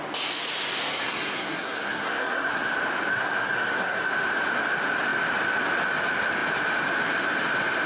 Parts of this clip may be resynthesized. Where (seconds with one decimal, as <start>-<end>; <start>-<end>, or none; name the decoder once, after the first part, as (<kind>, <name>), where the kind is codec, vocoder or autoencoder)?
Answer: 0.9-2.7 (codec, SNAC); 3.1-4.1